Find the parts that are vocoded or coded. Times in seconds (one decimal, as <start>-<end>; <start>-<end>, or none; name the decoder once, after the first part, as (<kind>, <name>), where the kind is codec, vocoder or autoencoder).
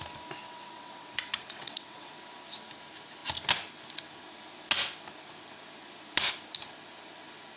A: 0.4-2.1 (vocoder, WaveNeXt)